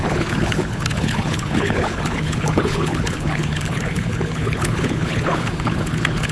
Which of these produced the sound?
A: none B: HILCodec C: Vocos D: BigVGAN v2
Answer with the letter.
B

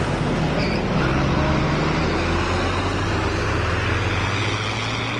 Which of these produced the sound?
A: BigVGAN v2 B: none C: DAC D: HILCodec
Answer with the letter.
B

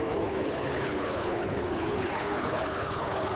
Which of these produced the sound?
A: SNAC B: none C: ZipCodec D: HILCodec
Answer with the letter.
D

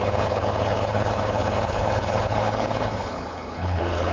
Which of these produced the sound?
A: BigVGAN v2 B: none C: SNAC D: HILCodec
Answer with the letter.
D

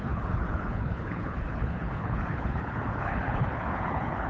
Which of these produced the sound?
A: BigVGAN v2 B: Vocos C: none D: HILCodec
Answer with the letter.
D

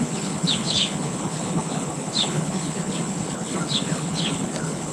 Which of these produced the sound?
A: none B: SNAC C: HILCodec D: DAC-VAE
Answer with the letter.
C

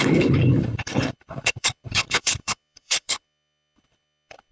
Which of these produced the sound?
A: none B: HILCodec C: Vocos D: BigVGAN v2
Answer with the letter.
B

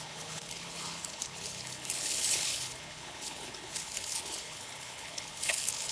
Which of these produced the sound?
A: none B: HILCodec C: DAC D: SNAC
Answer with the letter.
B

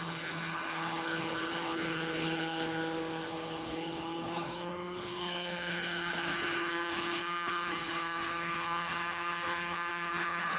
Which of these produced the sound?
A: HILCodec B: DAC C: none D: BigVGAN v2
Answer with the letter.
A